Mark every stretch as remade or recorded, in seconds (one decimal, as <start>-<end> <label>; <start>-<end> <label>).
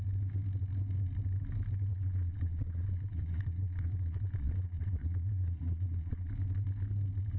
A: 0.0-1.9 recorded; 1.9-6.3 remade; 6.3-7.4 recorded